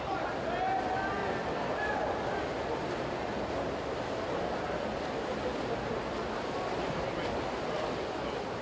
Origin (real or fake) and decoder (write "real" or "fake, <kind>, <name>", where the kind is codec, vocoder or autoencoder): real